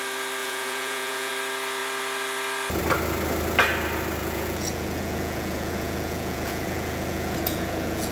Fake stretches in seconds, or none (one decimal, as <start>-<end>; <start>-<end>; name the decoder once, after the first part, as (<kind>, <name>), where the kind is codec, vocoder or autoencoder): 0.4-1.3 (vocoder, Vocos); 4.2-8.1